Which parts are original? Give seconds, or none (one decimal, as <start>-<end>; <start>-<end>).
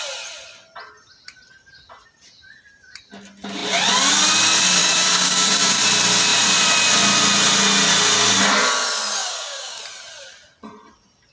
0.0-4.8; 5.8-9.2; 9.8-11.3